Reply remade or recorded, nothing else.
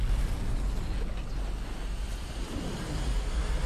recorded